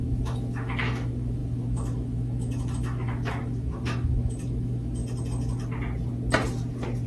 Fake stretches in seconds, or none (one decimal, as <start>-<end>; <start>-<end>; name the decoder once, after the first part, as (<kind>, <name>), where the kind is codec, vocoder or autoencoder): 0.0-5.0 (autoencoder, DAC-VAE)

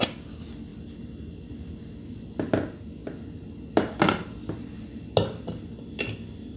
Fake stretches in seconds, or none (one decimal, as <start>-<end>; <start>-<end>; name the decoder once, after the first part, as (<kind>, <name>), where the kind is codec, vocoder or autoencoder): none

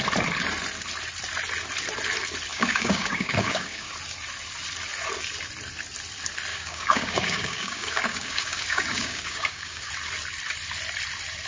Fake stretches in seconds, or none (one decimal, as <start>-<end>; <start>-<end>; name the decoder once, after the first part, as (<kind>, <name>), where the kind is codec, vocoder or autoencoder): 2.5-3.9 (codec, DAC); 6.5-9.9